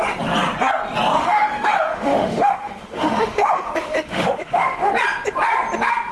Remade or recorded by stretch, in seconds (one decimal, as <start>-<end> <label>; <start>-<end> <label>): 0.0-1.2 recorded; 1.2-4.9 remade; 4.9-6.1 recorded